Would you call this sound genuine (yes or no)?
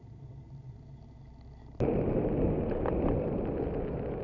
yes